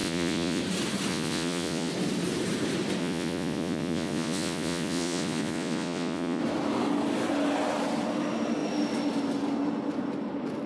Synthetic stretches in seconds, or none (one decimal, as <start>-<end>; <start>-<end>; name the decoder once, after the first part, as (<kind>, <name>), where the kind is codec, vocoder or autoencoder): 0.0-0.6 (vocoder, Vocos); 1.1-1.9; 3.0-6.4